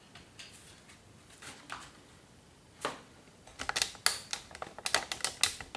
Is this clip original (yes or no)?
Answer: yes